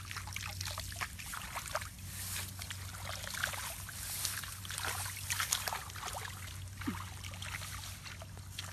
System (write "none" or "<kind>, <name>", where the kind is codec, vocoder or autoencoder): none